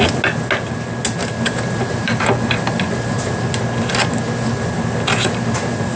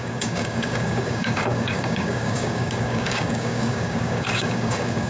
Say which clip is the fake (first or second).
second